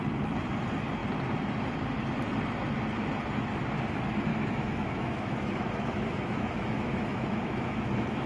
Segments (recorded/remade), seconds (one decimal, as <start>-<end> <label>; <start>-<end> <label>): 0.0-4.3 recorded; 4.3-8.3 remade